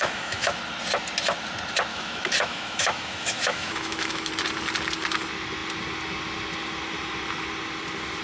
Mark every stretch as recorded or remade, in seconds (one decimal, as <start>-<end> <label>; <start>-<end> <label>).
0.0-0.6 remade; 0.6-1.9 recorded; 1.9-4.3 remade; 4.3-8.2 recorded